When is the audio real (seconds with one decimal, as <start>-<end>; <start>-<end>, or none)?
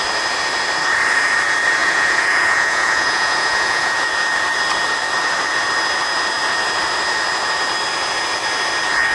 0.0-1.8; 4.1-9.1